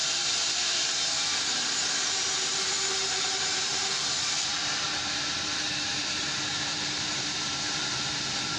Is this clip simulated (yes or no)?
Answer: yes